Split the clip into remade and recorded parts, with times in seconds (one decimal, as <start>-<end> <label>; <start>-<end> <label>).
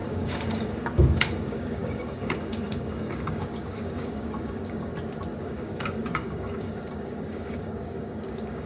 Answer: 0.0-4.9 remade; 4.9-5.4 recorded; 5.4-8.7 remade